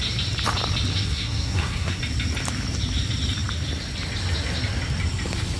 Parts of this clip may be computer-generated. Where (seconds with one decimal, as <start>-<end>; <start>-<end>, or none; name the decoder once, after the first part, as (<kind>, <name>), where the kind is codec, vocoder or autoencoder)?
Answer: 0.9-2.0 (codec, SNAC)